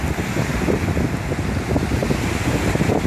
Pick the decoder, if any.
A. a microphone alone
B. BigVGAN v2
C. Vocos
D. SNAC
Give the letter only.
A